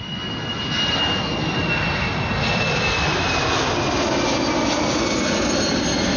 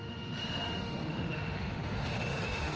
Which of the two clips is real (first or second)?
first